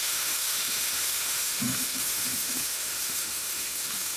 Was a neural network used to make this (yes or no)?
yes